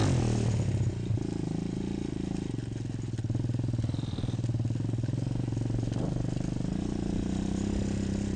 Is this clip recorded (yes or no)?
yes